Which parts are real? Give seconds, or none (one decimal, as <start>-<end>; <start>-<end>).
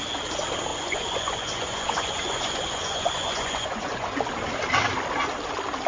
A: 0.0-0.7; 4.2-5.9